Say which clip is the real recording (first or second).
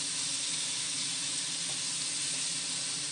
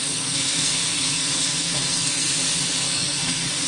first